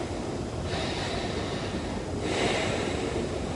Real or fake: real